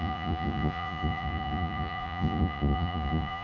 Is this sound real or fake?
fake